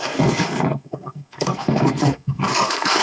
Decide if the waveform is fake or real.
fake